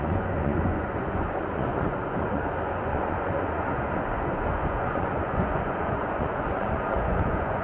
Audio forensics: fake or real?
fake